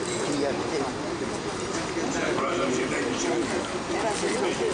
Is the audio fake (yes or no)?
no